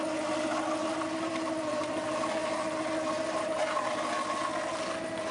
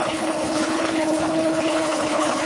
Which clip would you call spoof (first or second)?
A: second